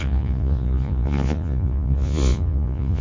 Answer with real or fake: fake